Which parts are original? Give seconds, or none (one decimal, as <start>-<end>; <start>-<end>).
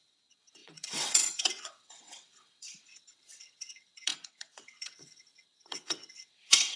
none